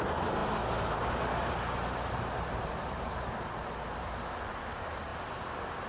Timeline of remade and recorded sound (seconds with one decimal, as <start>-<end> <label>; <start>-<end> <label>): 0.0-5.1 remade; 5.1-5.9 recorded